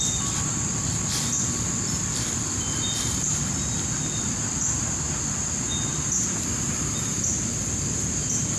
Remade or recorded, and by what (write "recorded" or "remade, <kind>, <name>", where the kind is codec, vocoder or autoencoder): recorded